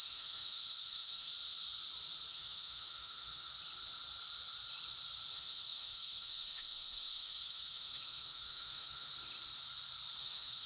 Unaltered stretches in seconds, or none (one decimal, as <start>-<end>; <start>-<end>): 1.3-2.3; 3.5-5.3; 9.1-10.2

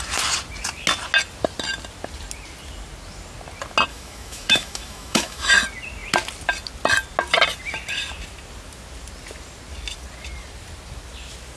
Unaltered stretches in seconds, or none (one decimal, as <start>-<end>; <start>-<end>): 0.0-3.9; 5.5-11.6

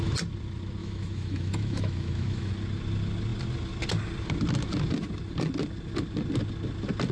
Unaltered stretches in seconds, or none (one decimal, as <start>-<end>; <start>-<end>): 0.0-0.8; 2.5-7.1

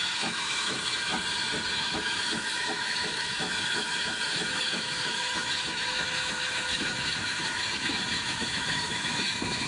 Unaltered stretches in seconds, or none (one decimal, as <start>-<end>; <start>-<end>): 1.1-1.7

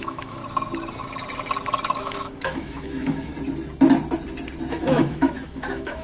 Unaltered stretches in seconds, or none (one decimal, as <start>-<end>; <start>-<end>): 0.4-2.0; 3.3-4.7

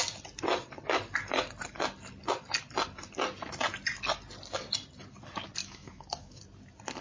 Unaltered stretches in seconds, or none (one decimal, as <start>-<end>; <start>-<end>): 0.0-5.6; 6.4-7.0